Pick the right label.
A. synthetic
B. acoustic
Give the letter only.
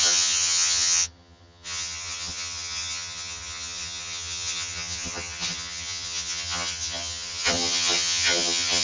A